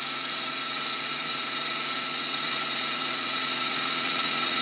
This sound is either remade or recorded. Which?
remade